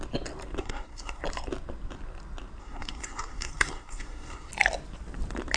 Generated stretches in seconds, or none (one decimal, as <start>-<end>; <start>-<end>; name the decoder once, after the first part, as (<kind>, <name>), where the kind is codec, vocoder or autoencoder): 0.6-1.2 (codec, SNAC); 2.6-4.5

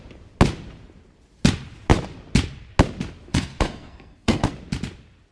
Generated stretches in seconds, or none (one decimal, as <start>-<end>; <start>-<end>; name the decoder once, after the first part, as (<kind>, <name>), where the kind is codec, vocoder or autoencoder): 3.3-4.5 (codec, SNAC)

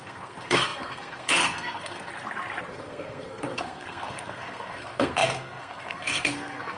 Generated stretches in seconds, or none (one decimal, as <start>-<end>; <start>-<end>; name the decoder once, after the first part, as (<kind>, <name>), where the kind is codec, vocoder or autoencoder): 0.0-2.1 (codec, SNAC); 2.7-6.8

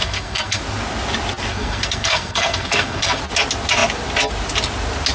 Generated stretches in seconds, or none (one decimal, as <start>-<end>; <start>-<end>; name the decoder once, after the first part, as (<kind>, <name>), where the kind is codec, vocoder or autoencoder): 0.0-0.6 (codec, SNAC); 1.5-3.2

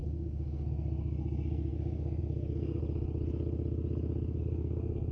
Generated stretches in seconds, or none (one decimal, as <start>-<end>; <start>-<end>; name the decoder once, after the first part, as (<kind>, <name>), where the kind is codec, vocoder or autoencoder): 0.0-2.8 (codec, SNAC); 4.4-5.1

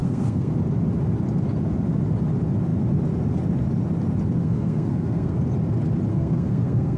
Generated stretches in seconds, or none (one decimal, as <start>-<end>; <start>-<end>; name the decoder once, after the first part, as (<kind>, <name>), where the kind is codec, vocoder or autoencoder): 0.0-0.5 (codec, SNAC); 4.4-5.4; 6.1-7.0